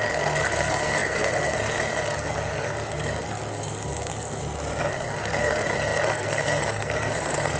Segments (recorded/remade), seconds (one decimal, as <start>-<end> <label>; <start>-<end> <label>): 0.0-4.4 remade; 4.4-4.9 recorded; 4.9-7.6 remade

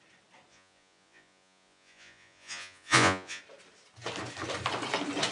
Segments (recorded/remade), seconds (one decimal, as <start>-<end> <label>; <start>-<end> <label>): 0.0-0.5 recorded; 0.5-3.4 remade; 3.4-5.3 recorded

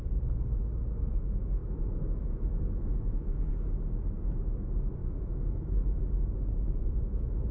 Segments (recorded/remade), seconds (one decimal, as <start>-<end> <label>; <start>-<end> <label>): 0.0-1.6 recorded; 1.6-3.5 remade; 3.5-5.0 recorded; 5.0-6.0 remade; 6.0-7.5 recorded

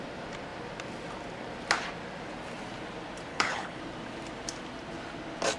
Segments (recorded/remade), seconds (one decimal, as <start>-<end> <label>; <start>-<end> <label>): 0.0-3.3 recorded; 3.3-3.8 remade; 3.8-5.6 recorded

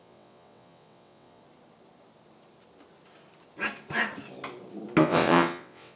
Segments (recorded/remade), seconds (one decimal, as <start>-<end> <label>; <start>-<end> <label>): 0.0-1.4 remade; 1.4-5.0 recorded; 5.0-6.0 remade